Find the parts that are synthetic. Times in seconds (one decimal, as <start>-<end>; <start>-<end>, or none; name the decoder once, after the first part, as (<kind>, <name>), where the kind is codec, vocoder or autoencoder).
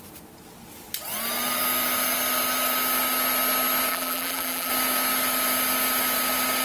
3.9-4.7 (vocoder, BigVGAN v2)